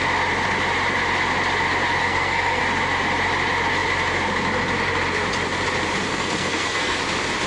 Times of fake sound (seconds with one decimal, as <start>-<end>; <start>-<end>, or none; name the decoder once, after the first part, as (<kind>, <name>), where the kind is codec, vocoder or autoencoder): 2.0-2.6 (codec, SNAC); 6.1-7.0